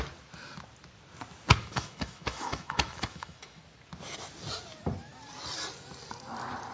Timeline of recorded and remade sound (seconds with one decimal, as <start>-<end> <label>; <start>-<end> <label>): 0.0-1.6 recorded; 1.6-3.6 remade; 3.6-6.7 recorded